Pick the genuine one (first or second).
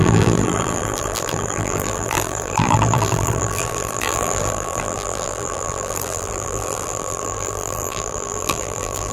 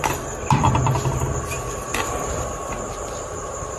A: second